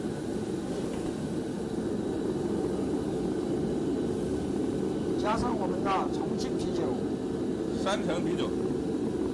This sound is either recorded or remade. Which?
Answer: recorded